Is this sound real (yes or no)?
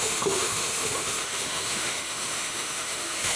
no